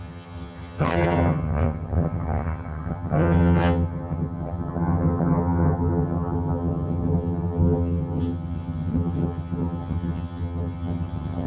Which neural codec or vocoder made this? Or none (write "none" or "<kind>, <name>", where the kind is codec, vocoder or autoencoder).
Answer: vocoder, HiFi-GAN